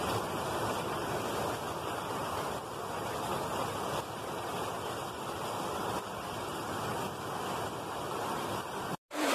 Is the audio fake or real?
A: real